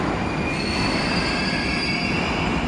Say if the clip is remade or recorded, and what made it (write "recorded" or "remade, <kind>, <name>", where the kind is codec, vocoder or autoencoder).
recorded